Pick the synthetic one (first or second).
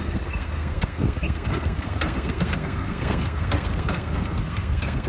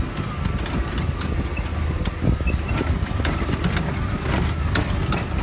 first